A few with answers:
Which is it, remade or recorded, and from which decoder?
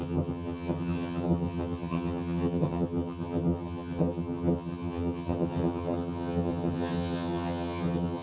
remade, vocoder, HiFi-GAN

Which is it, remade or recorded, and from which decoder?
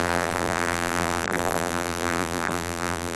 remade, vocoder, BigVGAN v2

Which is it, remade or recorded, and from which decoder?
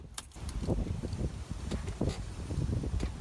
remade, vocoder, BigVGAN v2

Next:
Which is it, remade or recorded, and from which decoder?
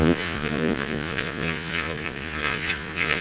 remade, vocoder, Vocos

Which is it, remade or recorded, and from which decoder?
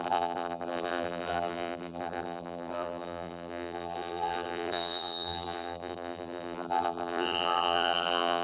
remade, vocoder, BigVGAN v2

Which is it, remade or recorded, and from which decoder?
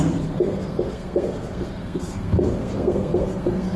remade, codec, SNAC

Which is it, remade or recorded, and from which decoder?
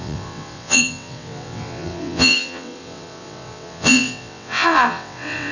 remade, vocoder, WaveNeXt